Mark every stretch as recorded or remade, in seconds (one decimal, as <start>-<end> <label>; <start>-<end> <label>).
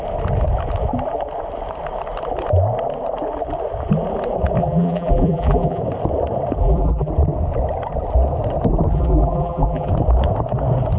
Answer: 0.0-4.6 recorded; 4.6-5.8 remade; 5.8-6.6 recorded; 6.6-7.1 remade; 7.1-8.9 recorded; 8.9-9.9 remade; 9.9-11.0 recorded